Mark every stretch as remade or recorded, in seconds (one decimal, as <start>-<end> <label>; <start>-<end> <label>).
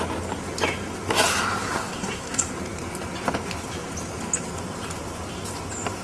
0.0-1.6 recorded; 1.6-2.5 remade; 2.5-6.0 recorded